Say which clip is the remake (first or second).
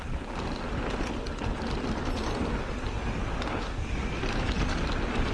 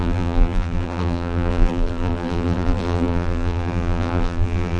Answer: second